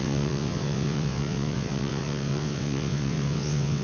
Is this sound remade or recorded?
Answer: remade